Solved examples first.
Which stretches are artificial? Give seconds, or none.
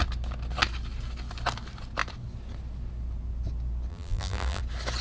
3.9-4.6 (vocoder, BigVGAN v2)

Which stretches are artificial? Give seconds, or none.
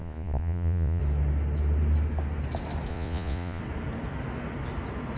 0.0-1.0 (vocoder, Vocos); 2.9-3.6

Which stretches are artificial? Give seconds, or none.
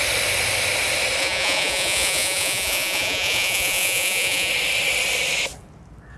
1.2-4.5 (vocoder, Vocos)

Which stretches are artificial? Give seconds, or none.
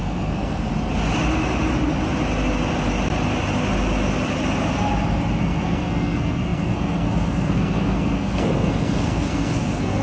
0.0-0.7 (codec, SNAC); 5.4-10.0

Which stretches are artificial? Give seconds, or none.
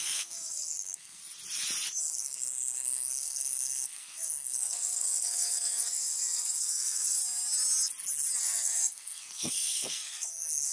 0.0-1.2 (codec, SNAC); 2.0-7.2; 8.4-10.7